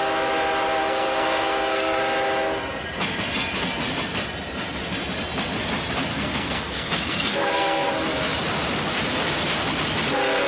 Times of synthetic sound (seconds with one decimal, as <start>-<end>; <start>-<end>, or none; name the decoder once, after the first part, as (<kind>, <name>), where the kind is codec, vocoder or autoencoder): 0.8-2.0 (codec, SNAC); 6.1-7.9